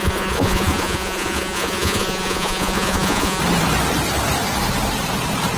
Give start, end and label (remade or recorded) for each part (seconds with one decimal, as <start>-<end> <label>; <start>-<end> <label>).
0.0-3.4 remade; 3.4-5.6 recorded